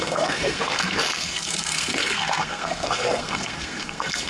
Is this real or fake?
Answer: fake